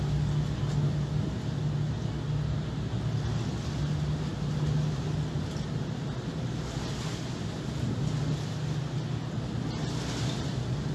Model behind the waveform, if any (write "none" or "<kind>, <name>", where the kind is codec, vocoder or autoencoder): none